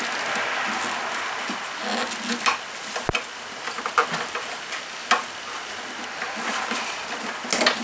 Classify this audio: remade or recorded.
recorded